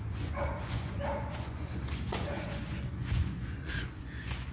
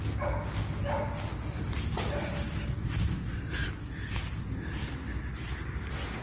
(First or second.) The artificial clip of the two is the first